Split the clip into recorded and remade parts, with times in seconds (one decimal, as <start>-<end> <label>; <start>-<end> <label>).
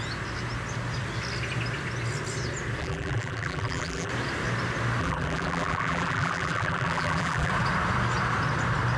0.0-2.8 recorded; 2.8-4.1 remade; 4.1-5.0 recorded; 5.0-7.5 remade; 7.5-9.0 recorded